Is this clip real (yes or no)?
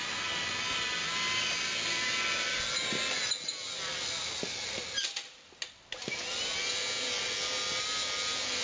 yes